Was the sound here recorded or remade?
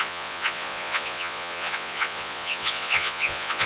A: remade